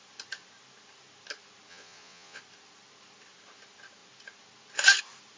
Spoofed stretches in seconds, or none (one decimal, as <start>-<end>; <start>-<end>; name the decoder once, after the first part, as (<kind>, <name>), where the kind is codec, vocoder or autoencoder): 1.7-2.4 (vocoder, Vocos)